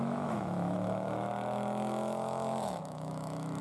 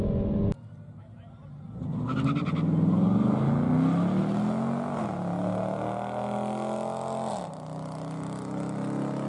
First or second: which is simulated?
first